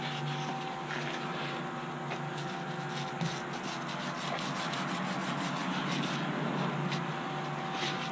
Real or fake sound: real